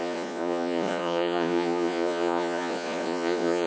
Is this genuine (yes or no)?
no